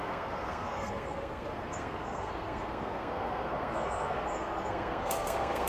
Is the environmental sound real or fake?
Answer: fake